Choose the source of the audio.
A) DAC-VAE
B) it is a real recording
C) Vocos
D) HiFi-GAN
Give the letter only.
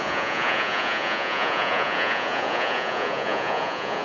C